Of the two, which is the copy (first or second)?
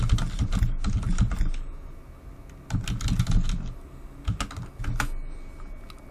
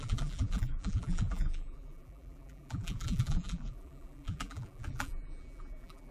second